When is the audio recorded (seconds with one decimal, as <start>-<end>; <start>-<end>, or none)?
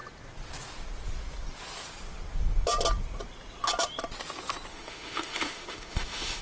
0.0-4.7